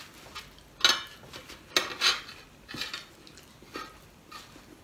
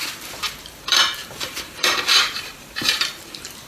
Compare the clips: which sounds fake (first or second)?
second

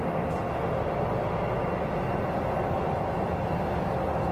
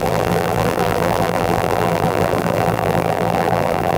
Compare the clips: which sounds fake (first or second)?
second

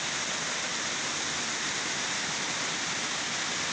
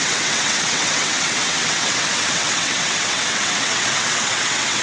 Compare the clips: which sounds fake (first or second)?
second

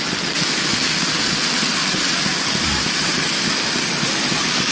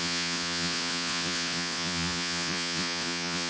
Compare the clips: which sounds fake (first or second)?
second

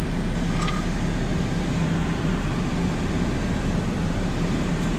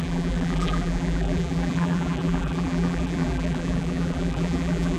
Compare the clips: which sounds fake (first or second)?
second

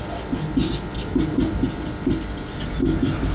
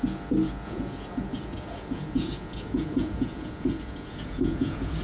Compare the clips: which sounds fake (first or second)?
second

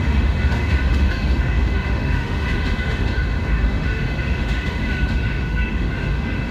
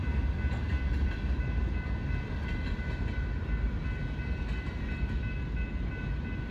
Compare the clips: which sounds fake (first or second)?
first